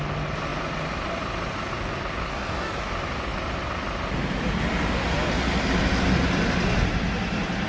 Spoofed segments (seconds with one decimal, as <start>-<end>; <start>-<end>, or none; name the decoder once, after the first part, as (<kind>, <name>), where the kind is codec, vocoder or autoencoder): 2.3-2.9 (codec, DAC)